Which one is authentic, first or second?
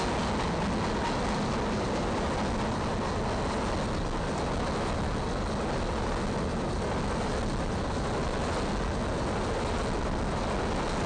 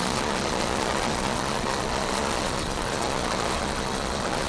first